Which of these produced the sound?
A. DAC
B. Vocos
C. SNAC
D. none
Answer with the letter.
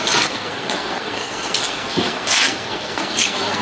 C